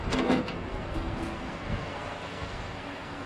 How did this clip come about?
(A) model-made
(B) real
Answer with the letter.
A